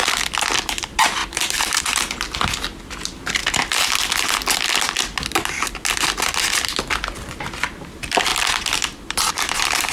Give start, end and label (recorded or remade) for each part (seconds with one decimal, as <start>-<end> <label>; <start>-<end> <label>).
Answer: 0.0-3.4 remade; 3.4-6.6 recorded; 6.6-9.9 remade